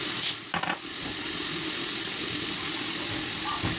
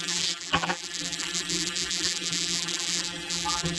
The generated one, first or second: second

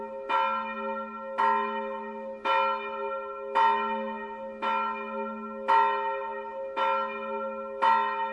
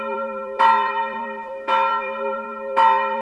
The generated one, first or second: second